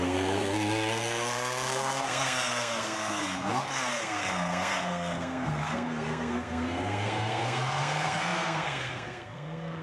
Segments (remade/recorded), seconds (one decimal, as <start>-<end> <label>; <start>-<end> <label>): 0.0-9.8 remade